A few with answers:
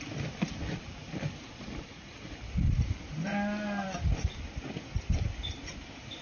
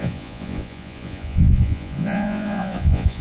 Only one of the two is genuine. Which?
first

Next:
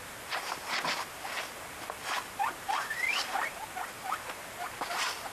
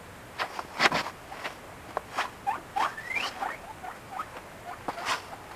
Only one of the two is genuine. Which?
second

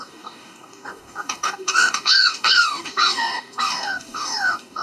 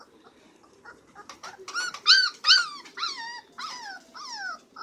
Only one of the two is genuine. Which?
second